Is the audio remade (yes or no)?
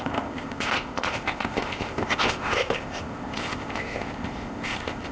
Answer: yes